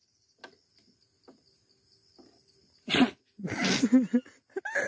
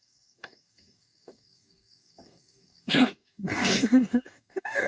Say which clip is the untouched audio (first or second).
first